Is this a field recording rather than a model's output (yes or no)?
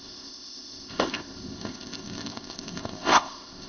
no